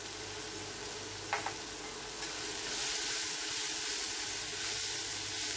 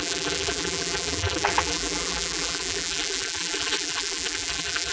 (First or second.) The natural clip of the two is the first